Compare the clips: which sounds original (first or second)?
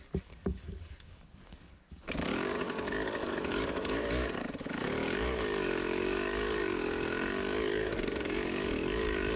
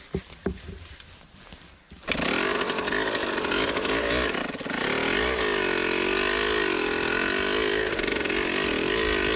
second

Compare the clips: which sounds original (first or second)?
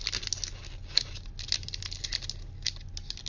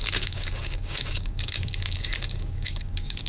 first